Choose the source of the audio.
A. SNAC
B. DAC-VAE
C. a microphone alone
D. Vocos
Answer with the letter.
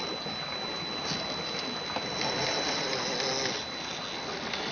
C